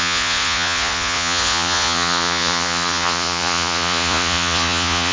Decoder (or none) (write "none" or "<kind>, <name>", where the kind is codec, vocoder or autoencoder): vocoder, Vocos